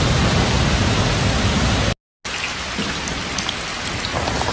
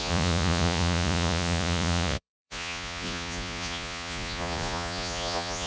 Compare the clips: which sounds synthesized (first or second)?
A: second